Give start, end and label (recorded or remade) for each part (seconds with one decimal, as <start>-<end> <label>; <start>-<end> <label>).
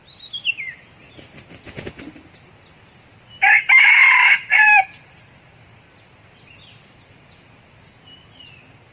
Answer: 0.0-4.0 recorded; 4.0-7.8 remade; 7.8-8.9 recorded